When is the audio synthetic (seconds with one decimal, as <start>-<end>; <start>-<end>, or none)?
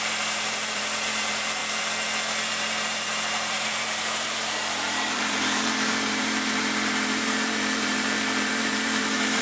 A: 0.0-1.6; 2.5-9.4